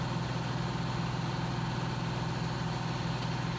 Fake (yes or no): no